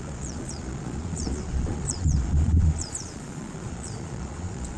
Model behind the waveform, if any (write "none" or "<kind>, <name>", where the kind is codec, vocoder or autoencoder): vocoder, Vocos